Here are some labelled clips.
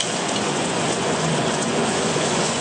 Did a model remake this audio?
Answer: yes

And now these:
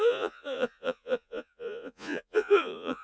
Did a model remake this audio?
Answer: yes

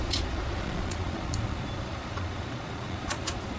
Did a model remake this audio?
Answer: yes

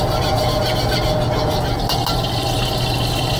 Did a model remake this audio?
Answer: no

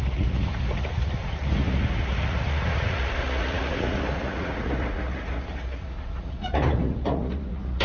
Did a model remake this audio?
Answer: yes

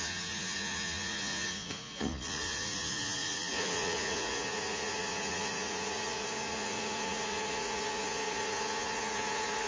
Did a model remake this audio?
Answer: yes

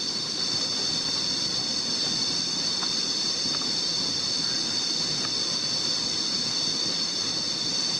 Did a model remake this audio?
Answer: no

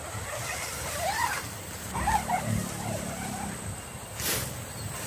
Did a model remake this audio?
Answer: no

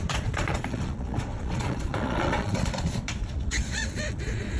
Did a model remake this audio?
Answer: yes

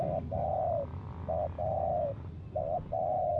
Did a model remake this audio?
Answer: no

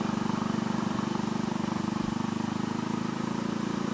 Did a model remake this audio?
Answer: no